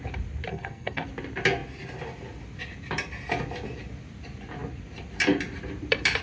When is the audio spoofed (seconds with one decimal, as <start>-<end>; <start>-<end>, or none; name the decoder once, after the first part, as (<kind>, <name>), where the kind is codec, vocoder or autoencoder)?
0.5-1.1 (codec, SNAC)